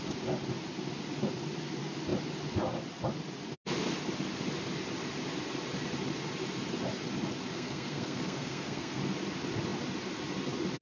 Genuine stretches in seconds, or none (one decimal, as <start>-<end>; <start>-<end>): 0.0-7.5; 9.0-10.8